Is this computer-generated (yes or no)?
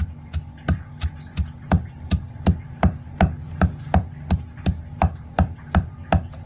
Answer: no